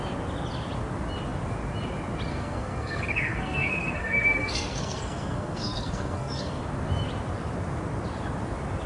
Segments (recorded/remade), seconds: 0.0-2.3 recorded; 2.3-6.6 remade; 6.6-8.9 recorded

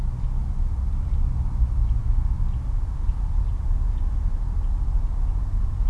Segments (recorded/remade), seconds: 0.0-5.9 recorded

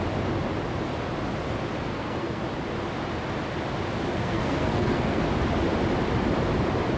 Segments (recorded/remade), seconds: 0.0-1.9 recorded; 1.9-2.4 remade; 2.4-4.1 recorded; 4.1-5.2 remade; 5.2-7.0 recorded

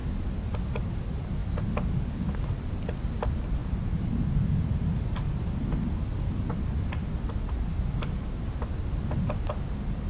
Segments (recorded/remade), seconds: 0.0-10.1 recorded